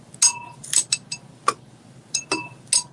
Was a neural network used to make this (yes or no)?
no